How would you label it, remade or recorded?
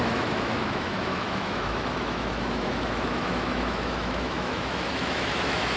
remade